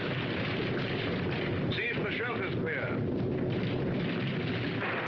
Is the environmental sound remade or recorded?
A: recorded